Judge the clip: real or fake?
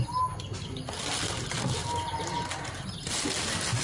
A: real